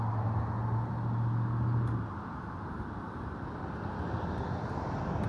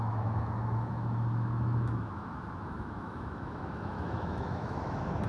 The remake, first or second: second